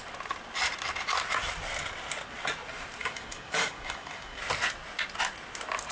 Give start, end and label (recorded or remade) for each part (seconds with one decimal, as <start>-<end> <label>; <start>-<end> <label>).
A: 0.0-3.0 recorded; 3.0-4.4 remade; 4.4-5.9 recorded